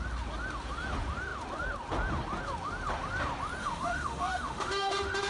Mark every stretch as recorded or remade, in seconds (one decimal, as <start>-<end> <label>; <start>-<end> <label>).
0.0-3.6 recorded; 3.6-5.3 remade